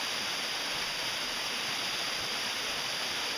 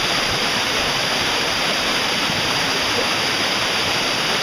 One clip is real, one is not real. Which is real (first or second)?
first